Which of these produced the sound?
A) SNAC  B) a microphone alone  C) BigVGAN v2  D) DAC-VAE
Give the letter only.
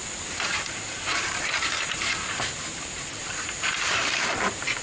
C